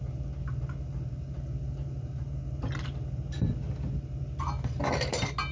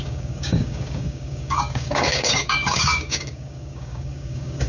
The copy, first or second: second